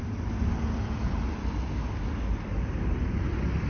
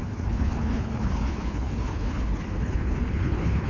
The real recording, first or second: first